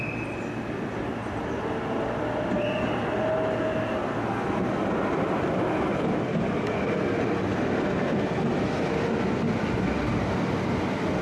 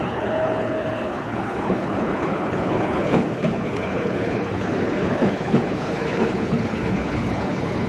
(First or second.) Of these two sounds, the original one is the first